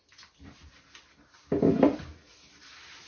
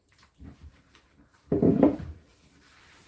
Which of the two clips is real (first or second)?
first